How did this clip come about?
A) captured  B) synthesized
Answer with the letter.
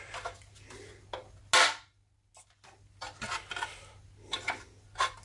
A